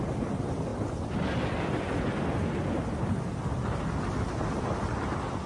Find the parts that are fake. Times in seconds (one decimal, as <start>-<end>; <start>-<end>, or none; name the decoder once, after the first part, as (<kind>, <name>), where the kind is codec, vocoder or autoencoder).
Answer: none